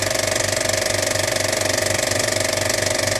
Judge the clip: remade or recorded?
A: recorded